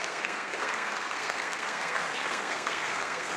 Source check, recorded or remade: remade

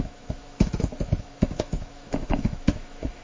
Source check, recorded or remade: remade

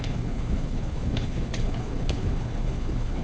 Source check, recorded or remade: remade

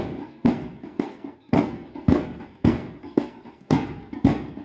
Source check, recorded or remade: remade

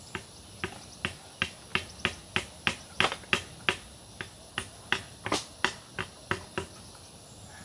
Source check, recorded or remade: recorded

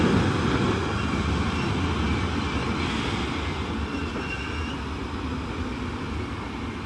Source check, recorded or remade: recorded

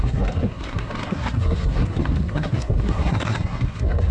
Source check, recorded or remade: remade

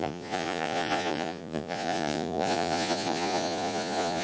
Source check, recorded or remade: remade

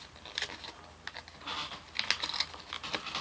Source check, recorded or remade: recorded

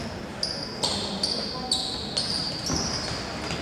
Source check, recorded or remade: recorded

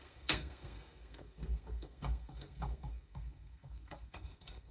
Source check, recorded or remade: remade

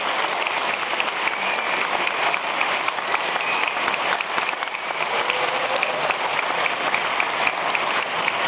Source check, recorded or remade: recorded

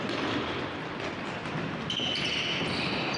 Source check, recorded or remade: recorded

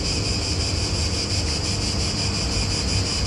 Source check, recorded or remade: recorded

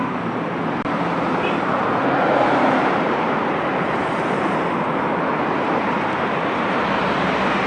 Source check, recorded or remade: remade